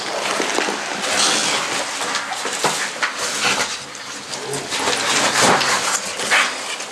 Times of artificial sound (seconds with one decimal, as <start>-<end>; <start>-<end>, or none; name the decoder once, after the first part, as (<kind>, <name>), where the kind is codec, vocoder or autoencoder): none